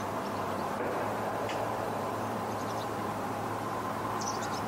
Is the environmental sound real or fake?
fake